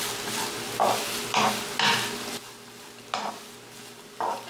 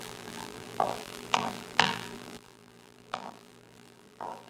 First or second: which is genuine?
first